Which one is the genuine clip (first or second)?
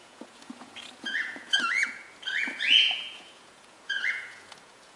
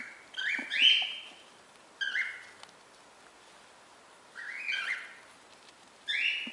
second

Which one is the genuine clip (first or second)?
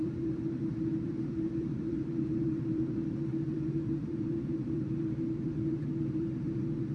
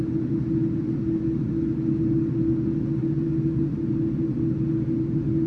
second